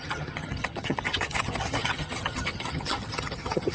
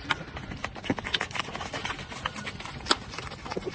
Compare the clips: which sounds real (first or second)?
second